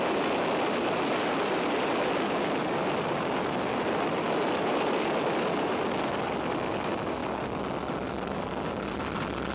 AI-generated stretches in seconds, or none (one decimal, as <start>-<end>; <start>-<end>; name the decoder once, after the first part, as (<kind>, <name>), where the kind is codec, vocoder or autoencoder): 0.0-7.2 (vocoder, BigVGAN v2); 8.1-9.5